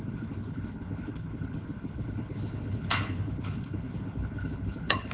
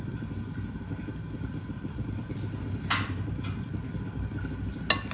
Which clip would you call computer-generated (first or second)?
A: first